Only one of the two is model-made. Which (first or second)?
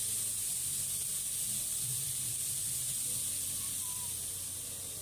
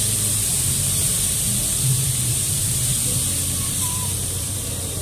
second